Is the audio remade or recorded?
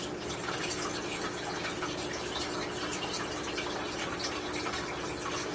recorded